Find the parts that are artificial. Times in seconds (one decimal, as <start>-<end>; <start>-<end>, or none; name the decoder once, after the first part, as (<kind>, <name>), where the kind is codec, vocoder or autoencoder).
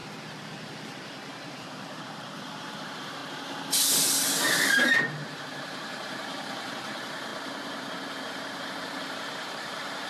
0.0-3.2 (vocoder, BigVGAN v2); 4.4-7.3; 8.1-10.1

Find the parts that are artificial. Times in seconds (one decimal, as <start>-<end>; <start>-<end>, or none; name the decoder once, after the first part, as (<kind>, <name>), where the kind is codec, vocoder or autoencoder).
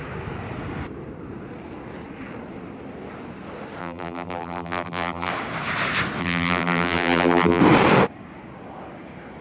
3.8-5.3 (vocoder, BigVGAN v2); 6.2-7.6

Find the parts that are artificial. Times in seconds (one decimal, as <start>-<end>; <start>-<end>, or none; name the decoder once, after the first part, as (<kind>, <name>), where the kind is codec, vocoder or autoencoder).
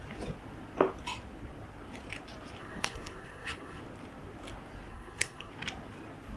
2.6-3.8 (codec, SNAC); 4.9-5.5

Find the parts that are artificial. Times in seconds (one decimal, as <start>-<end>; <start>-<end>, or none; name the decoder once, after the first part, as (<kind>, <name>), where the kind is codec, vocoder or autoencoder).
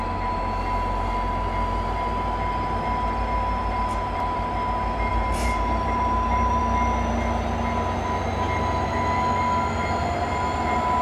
3.6-4.4 (vocoder, BigVGAN v2); 5.1-6.6